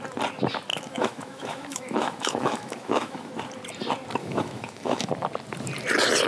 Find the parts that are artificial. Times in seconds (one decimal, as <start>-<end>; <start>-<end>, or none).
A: 0.7-3.3; 4.2-5.1